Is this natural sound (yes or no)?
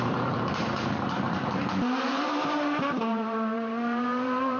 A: no